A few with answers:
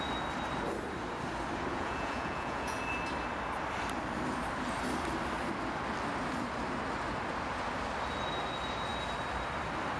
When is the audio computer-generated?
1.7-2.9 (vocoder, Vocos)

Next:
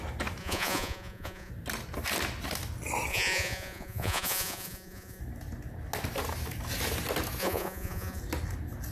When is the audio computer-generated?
0.4-1.5 (vocoder, Vocos); 3.1-5.2; 7.4-8.2

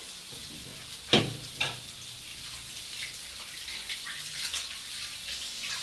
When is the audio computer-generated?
3.8-4.8 (vocoder, Vocos); 5.2-5.8